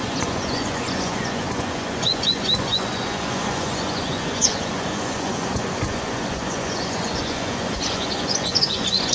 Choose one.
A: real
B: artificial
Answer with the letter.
B